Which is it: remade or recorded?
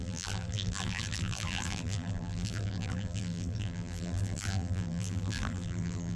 remade